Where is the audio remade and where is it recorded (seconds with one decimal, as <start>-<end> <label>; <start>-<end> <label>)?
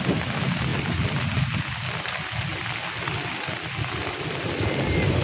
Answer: 0.0-0.7 remade; 0.7-1.6 recorded; 1.6-2.5 remade; 2.5-4.8 recorded; 4.8-5.2 remade